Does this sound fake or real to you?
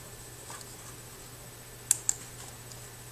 real